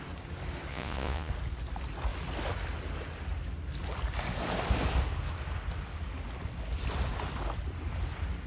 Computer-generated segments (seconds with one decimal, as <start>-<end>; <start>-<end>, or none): 0.7-1.3